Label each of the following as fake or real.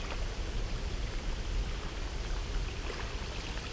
real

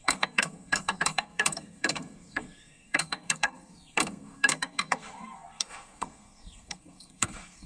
fake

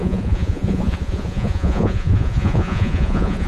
fake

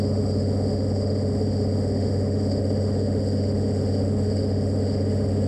fake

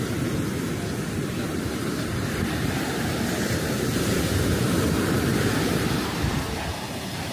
fake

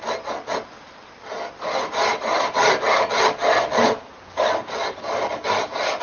real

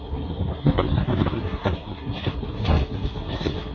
fake